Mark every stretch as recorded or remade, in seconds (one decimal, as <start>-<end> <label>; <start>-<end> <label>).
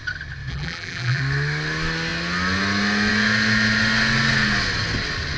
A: 0.0-0.5 recorded; 0.5-1.2 remade; 1.2-5.4 recorded